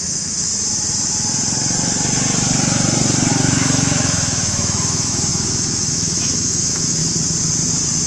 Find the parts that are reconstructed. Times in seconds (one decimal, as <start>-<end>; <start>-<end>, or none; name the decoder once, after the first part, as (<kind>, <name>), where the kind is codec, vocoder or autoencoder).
0.0-0.5 (autoencoder, DAC-VAE); 3.3-7.0

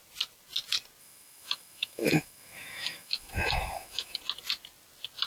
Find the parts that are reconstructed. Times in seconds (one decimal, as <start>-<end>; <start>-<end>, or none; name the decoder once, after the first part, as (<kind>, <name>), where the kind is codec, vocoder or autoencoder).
1.0-4.2 (autoencoder, DAC-VAE)

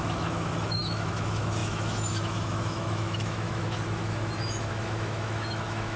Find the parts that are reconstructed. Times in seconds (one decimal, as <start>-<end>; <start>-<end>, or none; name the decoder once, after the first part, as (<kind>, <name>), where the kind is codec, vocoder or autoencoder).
0.0-6.0 (autoencoder, DAC-VAE)

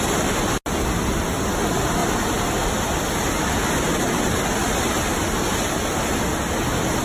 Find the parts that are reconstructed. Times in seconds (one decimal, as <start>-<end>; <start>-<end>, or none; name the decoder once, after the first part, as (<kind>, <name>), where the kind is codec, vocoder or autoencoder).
none

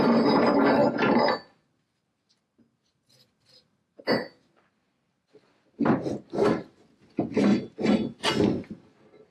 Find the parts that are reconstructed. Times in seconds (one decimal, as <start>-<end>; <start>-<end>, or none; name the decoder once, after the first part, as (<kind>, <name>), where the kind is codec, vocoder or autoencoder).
none

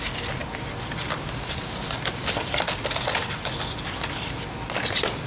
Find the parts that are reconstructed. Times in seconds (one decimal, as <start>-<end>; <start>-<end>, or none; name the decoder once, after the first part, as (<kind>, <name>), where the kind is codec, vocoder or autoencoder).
none